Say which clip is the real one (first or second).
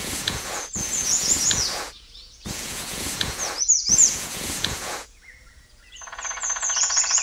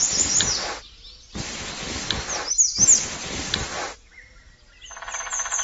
second